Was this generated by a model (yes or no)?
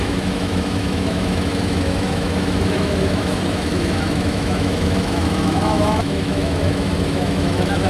yes